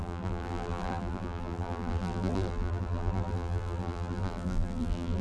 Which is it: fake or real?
fake